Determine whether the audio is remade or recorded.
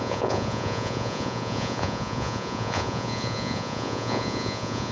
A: remade